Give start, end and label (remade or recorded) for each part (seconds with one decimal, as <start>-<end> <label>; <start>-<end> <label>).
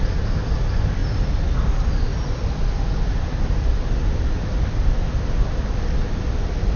0.0-6.8 recorded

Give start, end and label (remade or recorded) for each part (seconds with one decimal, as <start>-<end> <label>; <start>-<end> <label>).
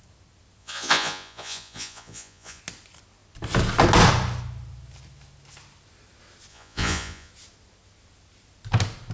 0.0-0.6 recorded; 0.6-2.6 remade; 2.6-6.5 recorded; 6.5-7.3 remade; 7.3-9.1 recorded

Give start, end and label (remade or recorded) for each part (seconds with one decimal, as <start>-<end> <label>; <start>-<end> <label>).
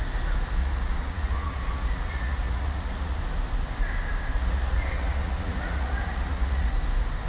0.0-0.6 recorded; 0.6-3.2 remade; 3.2-4.4 recorded; 4.4-6.7 remade; 6.7-7.3 recorded